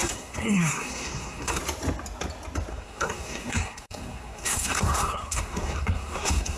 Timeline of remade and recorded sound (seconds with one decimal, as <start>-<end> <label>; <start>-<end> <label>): 0.0-1.6 remade; 1.6-2.7 recorded; 2.7-6.6 remade

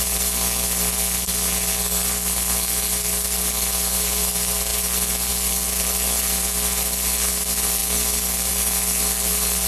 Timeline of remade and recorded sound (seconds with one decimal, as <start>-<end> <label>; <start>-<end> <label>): 0.0-9.7 remade

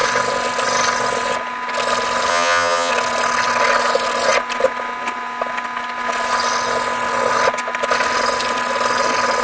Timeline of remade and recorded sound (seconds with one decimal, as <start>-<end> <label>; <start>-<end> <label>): 0.0-2.3 recorded; 2.3-2.9 remade; 2.9-9.4 recorded

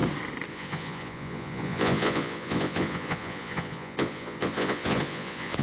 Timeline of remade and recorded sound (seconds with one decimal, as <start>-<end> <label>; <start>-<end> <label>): 0.0-0.5 recorded; 0.5-5.6 remade

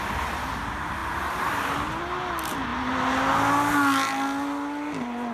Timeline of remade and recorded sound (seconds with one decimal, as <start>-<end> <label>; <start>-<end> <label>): 0.0-5.3 recorded

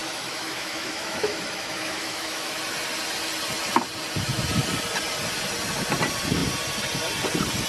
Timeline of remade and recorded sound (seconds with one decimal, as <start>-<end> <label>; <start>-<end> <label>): 0.0-2.6 remade; 2.6-7.7 recorded

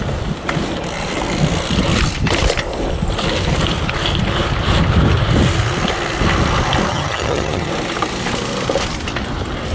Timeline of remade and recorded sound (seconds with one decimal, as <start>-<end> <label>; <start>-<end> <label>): 0.0-6.9 recorded; 6.9-7.7 remade; 7.7-9.7 recorded

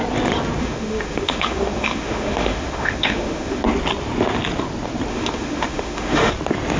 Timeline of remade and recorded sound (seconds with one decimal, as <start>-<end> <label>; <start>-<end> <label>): 0.0-0.6 recorded; 0.6-3.6 remade; 3.6-5.1 recorded; 5.1-6.3 remade; 6.3-6.8 recorded